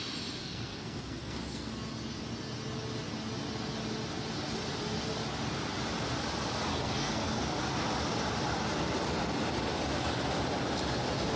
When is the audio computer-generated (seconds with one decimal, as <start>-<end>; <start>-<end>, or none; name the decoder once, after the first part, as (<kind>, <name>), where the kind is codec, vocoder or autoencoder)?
0.4-1.7 (codec, SNAC); 6.7-7.4